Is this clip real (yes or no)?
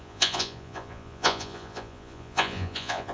no